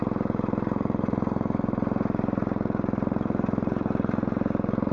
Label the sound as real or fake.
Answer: fake